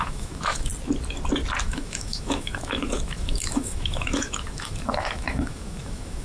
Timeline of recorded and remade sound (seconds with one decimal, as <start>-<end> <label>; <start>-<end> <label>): 0.0-0.7 remade; 0.7-1.6 recorded; 1.6-6.2 remade